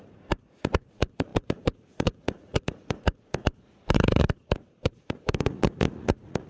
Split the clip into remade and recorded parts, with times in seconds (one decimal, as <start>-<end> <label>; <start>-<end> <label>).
0.0-6.5 remade

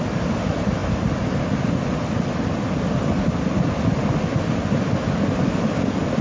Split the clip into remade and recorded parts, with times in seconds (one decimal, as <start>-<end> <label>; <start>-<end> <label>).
0.0-6.2 recorded

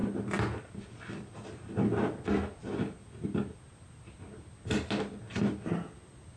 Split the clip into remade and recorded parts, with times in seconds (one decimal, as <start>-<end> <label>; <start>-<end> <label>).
0.0-6.4 recorded

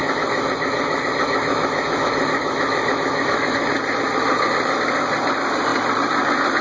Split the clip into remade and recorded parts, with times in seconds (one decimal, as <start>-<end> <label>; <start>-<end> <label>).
0.0-3.7 remade; 3.7-6.6 recorded

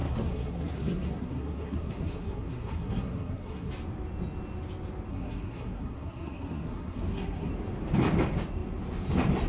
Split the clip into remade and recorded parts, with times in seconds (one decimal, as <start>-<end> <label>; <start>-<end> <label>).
0.0-3.7 remade; 3.7-5.1 recorded; 5.1-7.5 remade; 7.5-9.5 recorded

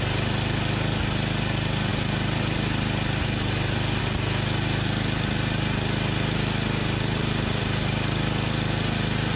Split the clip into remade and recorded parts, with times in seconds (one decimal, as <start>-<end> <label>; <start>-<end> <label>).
0.0-6.8 recorded; 6.8-7.6 remade; 7.6-9.4 recorded

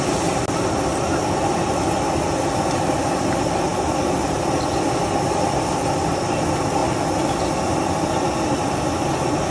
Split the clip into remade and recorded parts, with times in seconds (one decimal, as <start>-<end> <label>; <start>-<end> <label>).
0.0-9.5 recorded

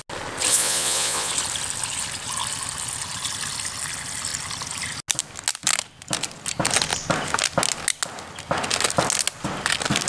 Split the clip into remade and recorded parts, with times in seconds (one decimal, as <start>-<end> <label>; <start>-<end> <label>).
0.0-0.5 recorded; 0.5-1.3 remade; 1.3-10.1 recorded